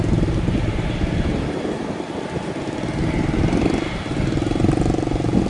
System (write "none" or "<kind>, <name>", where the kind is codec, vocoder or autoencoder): none